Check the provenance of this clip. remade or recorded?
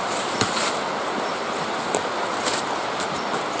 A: recorded